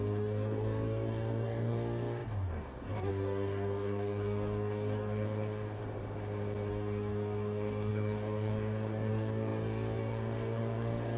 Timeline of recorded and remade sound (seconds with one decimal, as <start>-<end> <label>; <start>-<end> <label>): 0.0-5.8 remade; 5.8-6.7 recorded; 6.7-11.2 remade